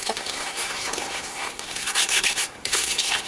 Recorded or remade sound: remade